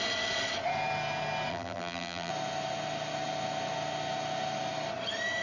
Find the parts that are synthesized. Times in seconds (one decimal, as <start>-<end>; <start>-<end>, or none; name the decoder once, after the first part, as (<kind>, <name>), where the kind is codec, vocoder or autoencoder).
1.5-2.3 (vocoder, BigVGAN v2)